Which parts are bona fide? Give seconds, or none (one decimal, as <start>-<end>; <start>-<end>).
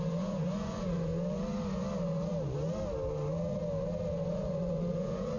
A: 1.1-4.3